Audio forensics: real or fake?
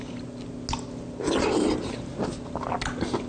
real